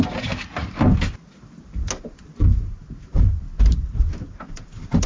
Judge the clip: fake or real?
real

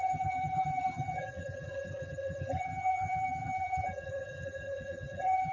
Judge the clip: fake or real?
fake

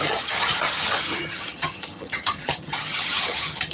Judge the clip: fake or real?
fake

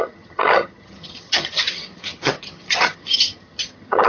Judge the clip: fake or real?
fake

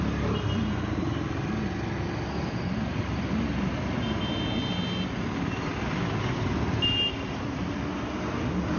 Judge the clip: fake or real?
real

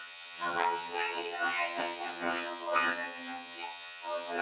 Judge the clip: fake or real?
fake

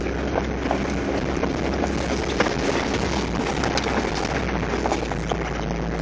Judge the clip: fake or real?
real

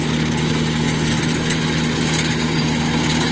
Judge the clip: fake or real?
real